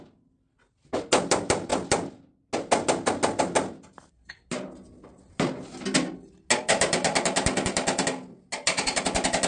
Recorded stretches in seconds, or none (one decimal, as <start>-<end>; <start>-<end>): 0.0-9.5

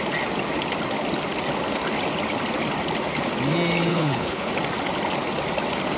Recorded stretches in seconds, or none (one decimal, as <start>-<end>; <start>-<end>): 0.0-3.9; 4.5-6.0

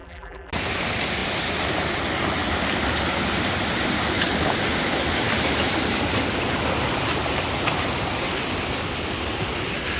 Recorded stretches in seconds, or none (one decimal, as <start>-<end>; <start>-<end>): 0.5-10.0

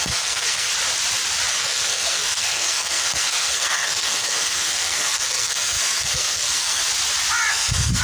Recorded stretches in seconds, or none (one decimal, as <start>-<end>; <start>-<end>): 0.7-1.5; 6.8-7.5

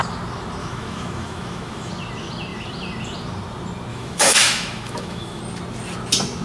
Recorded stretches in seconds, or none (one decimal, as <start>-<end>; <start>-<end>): 0.0-0.6; 1.9-3.9; 5.4-6.4